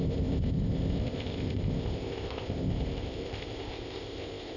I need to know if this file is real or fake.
fake